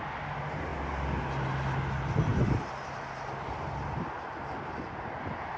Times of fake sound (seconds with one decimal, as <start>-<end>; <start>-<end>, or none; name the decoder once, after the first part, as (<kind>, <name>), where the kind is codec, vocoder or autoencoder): none